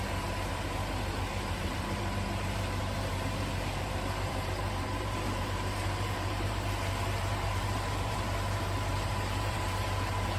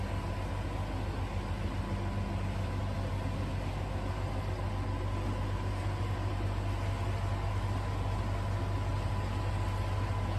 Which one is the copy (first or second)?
first